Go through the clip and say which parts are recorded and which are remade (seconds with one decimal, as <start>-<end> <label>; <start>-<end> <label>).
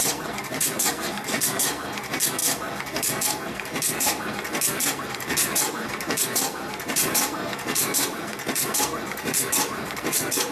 0.0-10.5 remade